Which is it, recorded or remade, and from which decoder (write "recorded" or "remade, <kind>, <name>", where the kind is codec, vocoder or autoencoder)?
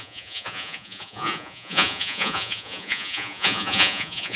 remade, vocoder, Vocos